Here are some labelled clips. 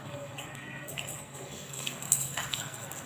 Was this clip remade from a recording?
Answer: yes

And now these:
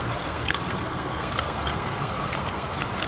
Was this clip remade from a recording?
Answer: yes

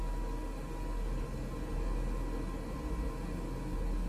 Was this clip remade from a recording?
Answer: no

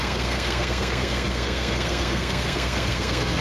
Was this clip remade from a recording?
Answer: yes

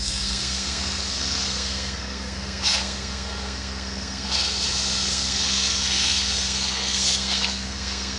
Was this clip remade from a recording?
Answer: yes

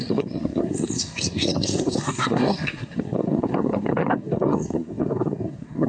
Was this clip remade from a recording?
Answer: yes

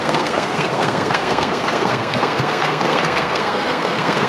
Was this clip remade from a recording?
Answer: yes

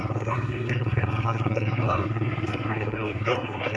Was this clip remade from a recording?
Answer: yes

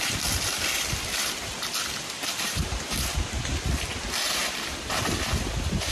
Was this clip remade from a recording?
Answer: no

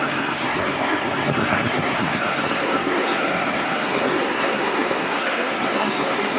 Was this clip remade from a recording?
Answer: yes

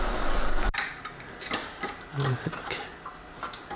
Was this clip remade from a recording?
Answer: no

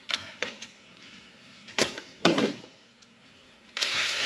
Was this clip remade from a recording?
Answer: yes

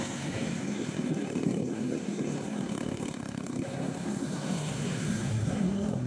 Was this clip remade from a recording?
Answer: yes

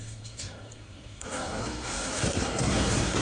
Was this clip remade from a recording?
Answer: yes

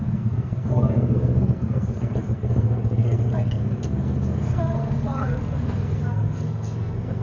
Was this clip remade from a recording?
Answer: yes